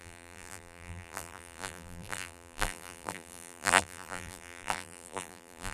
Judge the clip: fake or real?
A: fake